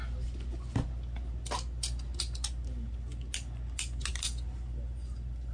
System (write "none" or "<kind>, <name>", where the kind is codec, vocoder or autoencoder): none